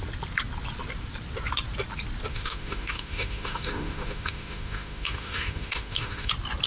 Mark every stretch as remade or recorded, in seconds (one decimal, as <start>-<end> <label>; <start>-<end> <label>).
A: 0.0-2.3 recorded; 2.3-6.3 remade; 6.3-6.7 recorded